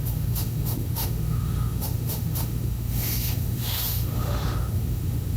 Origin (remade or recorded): remade